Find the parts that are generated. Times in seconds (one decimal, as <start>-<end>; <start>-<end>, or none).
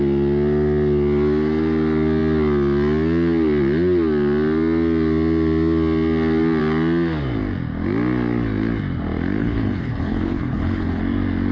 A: 9.4-11.0